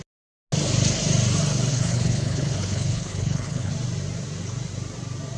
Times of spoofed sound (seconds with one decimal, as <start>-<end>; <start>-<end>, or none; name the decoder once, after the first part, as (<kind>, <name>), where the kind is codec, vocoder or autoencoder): 1.7-3.7 (codec, HILCodec)